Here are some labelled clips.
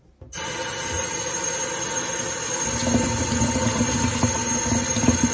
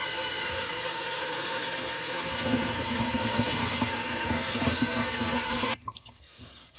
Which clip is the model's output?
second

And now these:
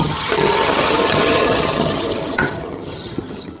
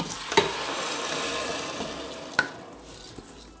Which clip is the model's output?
first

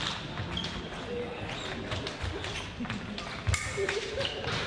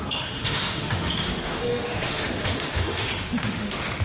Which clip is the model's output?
second